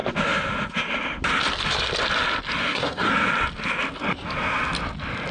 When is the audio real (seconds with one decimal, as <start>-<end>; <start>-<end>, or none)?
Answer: 0.0-2.6; 3.1-5.3